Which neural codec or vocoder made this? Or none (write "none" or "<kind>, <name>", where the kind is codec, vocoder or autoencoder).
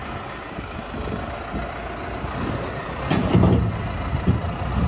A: none